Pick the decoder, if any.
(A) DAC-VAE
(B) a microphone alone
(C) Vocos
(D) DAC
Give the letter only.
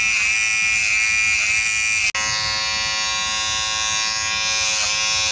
B